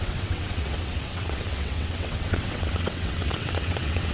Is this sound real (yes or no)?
no